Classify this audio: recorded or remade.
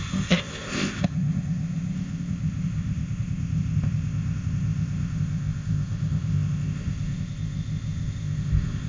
remade